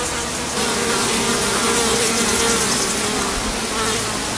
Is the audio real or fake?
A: real